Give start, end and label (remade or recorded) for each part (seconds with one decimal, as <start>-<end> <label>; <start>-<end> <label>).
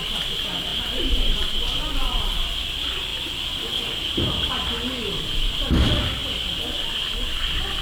0.0-0.7 recorded; 0.7-2.2 remade; 2.2-7.8 recorded